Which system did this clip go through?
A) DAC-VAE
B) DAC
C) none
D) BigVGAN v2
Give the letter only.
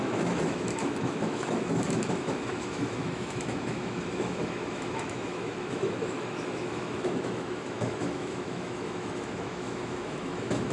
A